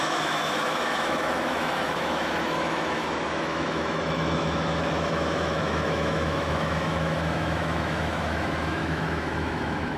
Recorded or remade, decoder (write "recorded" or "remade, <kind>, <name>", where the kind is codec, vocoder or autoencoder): remade, autoencoder, DAC-VAE